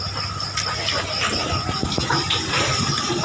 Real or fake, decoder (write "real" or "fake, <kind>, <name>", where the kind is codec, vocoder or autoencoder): real